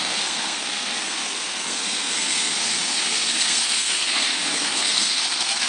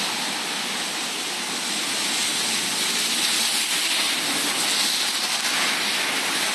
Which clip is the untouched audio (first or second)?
second